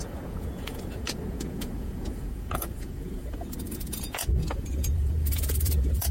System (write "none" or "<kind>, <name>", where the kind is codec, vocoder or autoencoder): vocoder, Vocos